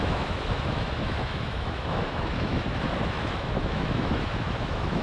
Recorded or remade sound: remade